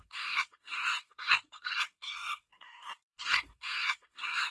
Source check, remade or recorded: remade